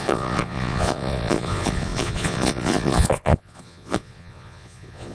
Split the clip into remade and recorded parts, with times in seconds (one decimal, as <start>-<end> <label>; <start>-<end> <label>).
0.0-5.1 remade